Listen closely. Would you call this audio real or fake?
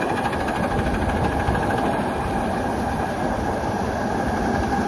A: real